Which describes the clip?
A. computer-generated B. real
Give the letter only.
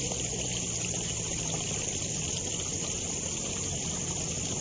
B